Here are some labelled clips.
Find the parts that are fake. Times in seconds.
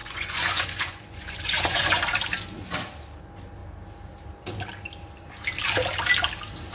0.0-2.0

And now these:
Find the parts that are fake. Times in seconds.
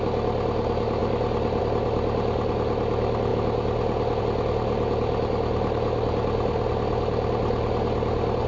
none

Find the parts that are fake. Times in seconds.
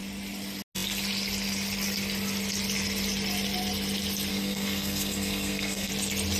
4.3-5.9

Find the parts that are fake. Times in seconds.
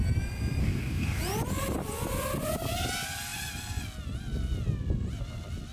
0.6-1.2